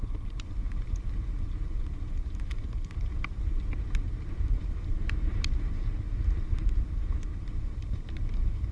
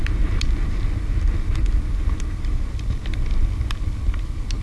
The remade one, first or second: first